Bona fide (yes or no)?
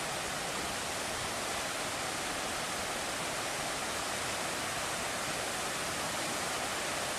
yes